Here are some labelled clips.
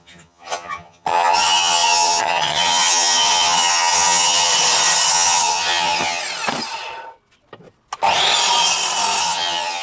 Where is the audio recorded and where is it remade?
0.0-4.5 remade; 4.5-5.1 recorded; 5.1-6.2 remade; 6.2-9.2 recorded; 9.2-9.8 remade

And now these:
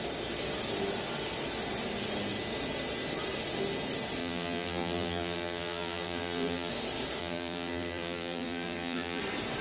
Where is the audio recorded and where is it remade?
0.0-4.2 recorded; 4.2-6.7 remade; 6.7-7.2 recorded; 7.2-9.2 remade; 9.2-9.6 recorded

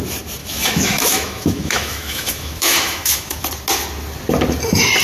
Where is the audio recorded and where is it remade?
0.0-0.4 recorded; 0.4-3.4 remade; 3.4-5.0 recorded